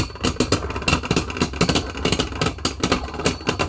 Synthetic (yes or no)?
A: no